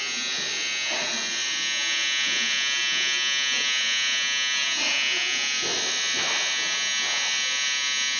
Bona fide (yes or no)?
yes